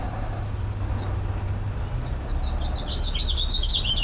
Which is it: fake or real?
real